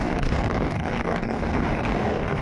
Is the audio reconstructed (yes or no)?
yes